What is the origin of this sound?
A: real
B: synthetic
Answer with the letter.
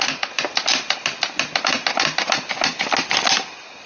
A